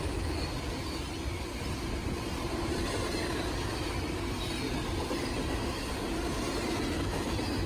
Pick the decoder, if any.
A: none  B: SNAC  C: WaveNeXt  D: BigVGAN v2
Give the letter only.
A